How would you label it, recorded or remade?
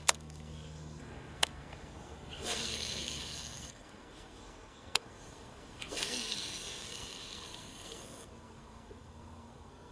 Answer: remade